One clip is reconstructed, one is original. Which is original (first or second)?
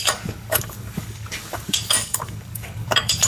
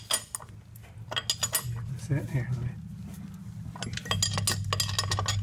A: second